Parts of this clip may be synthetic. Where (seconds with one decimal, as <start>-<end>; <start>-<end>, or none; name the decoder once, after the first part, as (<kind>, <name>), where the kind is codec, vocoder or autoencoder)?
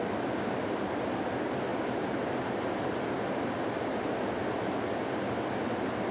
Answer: none